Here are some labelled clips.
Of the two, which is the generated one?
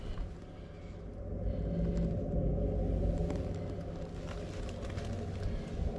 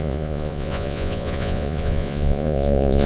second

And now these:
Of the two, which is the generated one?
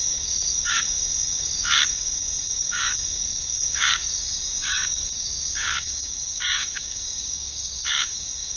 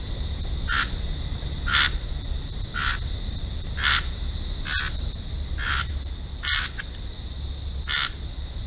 first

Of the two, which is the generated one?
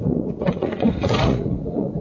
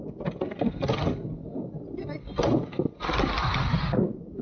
first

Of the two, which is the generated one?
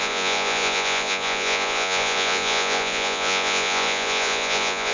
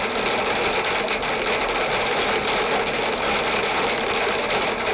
first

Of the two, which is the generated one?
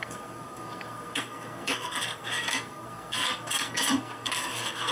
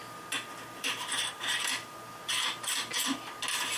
first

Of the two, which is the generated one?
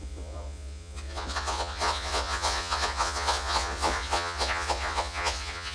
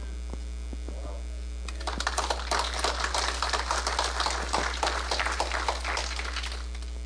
first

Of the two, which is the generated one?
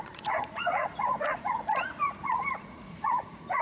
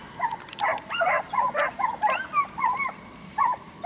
first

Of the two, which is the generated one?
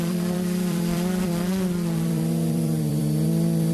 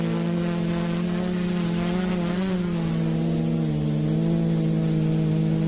first